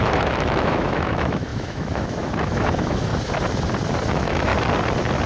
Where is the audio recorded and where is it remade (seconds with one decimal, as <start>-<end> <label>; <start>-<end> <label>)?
0.0-3.1 remade; 3.1-4.1 recorded; 4.1-4.5 remade; 4.5-5.3 recorded